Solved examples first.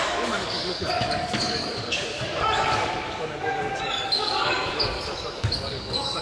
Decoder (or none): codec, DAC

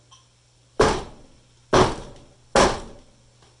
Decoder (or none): none